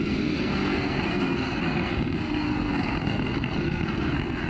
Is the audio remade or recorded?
remade